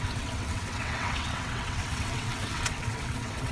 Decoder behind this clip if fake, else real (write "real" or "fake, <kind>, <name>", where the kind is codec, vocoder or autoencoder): fake, vocoder, WaveNeXt